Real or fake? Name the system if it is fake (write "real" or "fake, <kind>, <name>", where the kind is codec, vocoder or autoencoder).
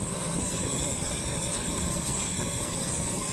fake, codec, SNAC